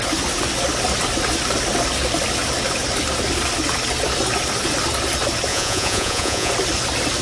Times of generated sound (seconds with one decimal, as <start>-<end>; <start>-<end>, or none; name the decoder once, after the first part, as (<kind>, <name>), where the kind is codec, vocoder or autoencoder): 5.5-6.5 (vocoder, Vocos)